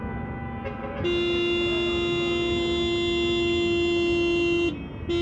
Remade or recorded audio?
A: recorded